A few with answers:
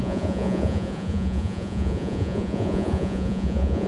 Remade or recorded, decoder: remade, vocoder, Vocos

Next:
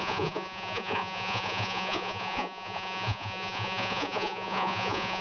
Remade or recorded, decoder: remade, vocoder, Vocos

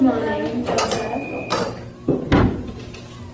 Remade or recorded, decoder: recorded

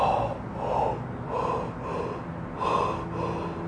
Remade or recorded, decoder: recorded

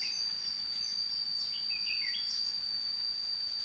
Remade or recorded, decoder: recorded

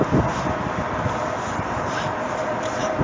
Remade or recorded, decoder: recorded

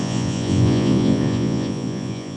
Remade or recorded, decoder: remade, vocoder, Vocos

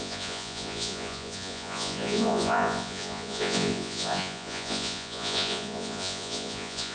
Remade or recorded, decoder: remade, vocoder, Vocos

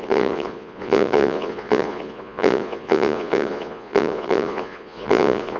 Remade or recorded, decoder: remade, vocoder, Vocos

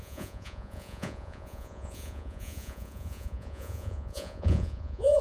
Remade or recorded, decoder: remade, vocoder, Vocos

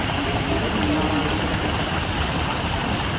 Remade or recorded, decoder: recorded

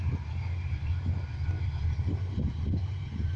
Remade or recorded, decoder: recorded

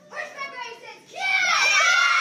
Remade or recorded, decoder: recorded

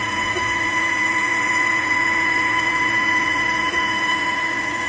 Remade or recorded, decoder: remade, vocoder, Vocos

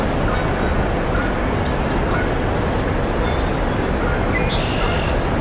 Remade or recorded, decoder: recorded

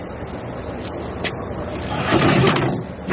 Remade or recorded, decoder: recorded